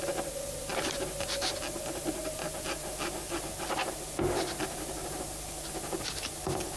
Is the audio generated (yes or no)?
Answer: no